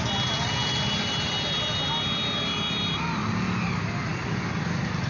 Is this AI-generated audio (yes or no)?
no